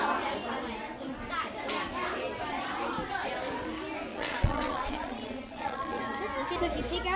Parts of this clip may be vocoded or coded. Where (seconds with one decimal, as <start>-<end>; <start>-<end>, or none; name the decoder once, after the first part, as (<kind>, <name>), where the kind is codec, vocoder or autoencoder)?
4.1-6.0 (vocoder, Vocos)